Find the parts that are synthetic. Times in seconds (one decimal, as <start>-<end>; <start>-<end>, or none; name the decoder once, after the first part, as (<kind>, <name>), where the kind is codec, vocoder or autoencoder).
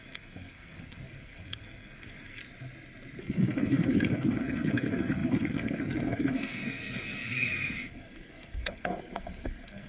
0.0-2.4 (codec, SNAC); 3.2-9.9